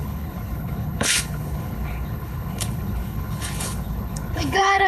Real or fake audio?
fake